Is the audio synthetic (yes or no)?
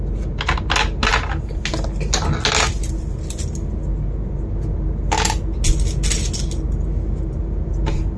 no